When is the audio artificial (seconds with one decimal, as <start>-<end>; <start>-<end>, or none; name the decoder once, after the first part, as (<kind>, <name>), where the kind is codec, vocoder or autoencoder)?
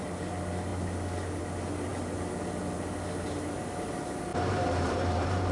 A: 4.3-5.5 (vocoder, BigVGAN v2)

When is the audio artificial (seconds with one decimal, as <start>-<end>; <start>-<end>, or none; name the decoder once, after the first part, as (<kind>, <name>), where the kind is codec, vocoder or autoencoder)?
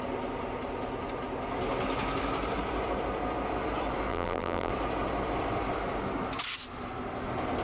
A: 4.1-4.7 (vocoder, BigVGAN v2)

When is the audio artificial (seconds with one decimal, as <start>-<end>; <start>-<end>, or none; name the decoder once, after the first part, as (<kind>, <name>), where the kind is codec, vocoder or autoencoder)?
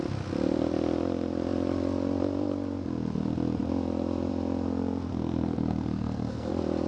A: 5.1-6.5 (codec, SNAC)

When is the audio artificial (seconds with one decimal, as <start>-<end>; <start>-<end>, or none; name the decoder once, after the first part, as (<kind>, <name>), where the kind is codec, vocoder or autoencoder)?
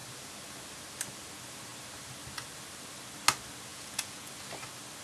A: 3.7-4.3 (vocoder, Vocos)